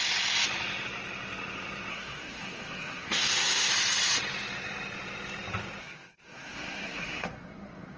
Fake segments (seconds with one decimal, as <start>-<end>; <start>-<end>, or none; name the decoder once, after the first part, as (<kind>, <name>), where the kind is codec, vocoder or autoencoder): 1.9-3.7 (codec, SNAC); 5.8-8.0